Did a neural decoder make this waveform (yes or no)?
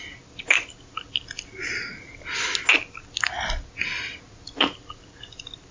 no